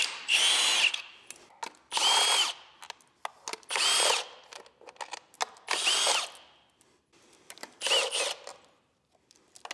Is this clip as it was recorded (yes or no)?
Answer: yes